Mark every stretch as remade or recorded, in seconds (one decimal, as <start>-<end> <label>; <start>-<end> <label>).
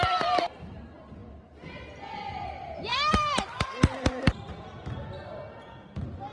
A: 0.0-6.3 recorded